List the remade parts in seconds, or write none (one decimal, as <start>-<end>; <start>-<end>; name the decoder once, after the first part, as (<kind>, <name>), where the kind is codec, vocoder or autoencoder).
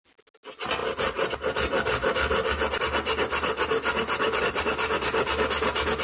none